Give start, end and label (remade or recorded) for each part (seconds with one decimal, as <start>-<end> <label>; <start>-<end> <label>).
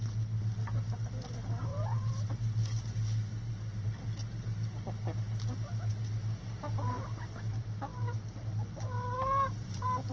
0.0-1.7 recorded; 1.7-2.3 remade; 2.3-10.1 recorded